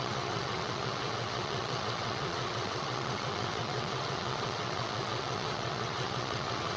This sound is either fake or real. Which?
fake